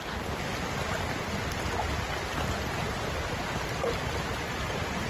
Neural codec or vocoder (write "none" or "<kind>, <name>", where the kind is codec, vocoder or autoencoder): none